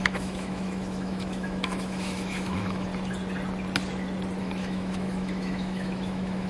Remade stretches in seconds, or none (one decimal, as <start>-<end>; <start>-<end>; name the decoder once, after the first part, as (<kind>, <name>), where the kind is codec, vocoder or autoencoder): 0.0-2.9 (autoencoder, DAC-VAE); 4.4-6.5

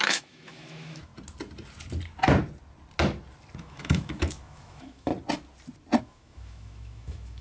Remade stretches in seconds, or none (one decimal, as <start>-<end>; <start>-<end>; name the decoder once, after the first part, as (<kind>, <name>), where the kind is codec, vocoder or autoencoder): 0.0-1.1 (autoencoder, DAC-VAE); 3.6-5.1; 6.0-7.4

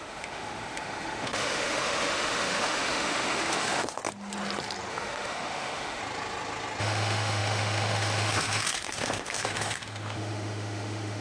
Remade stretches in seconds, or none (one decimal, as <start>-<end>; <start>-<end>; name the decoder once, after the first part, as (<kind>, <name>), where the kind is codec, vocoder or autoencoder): 0.0-4.0 (autoencoder, DAC-VAE); 4.9-6.0; 6.8-11.2

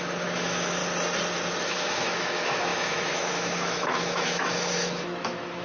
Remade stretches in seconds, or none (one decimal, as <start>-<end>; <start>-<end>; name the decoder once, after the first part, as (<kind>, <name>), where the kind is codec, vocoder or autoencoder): 0.0-0.8 (autoencoder, DAC-VAE); 1.6-5.6

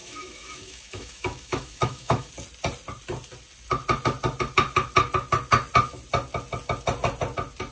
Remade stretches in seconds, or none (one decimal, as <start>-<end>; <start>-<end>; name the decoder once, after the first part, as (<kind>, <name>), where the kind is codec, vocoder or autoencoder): 0.0-2.3 (autoencoder, DAC-VAE)

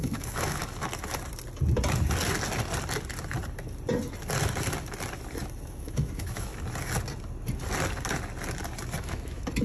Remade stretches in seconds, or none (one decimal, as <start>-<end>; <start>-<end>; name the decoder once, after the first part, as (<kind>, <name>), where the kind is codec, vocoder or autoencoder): 0.0-0.6 (autoencoder, DAC-VAE); 5.7-6.5; 9.0-9.6